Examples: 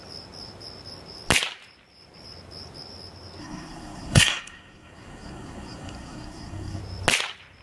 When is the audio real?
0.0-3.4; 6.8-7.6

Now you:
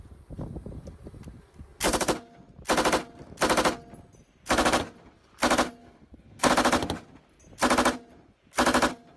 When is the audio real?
0.0-5.8; 6.5-9.2

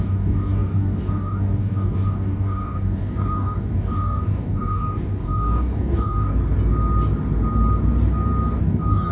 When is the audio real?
6.4-8.6

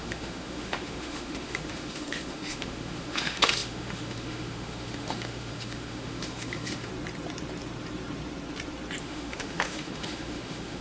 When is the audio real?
6.9-9.0

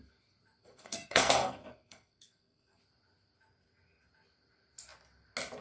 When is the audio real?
0.0-0.6; 2.8-5.6

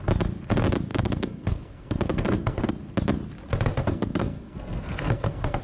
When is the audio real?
0.0-0.9; 2.7-3.8